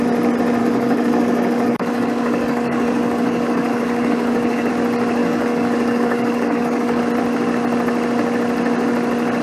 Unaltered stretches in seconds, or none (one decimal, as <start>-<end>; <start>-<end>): 0.0-0.6; 4.7-5.2; 7.0-9.4